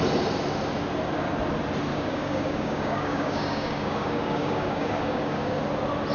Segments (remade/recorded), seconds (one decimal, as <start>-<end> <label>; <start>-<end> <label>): 0.0-1.9 recorded; 1.9-5.6 remade; 5.6-6.1 recorded

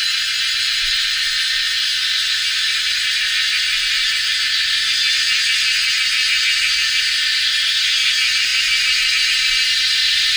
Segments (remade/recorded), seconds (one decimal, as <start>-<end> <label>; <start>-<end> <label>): 0.0-10.4 recorded

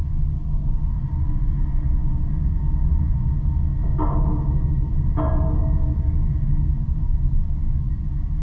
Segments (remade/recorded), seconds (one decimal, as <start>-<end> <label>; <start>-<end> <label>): 0.0-8.4 recorded

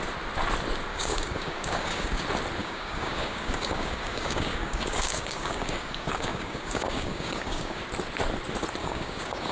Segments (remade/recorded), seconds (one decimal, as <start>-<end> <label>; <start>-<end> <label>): 0.0-0.9 recorded; 0.9-2.2 remade; 2.2-2.6 recorded; 2.6-7.8 remade; 7.8-8.8 recorded; 8.8-9.5 remade